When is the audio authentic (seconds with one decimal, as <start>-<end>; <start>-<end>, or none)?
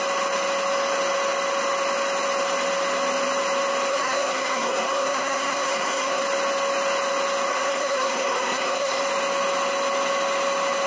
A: 0.0-3.9; 6.2-7.5; 9.0-10.9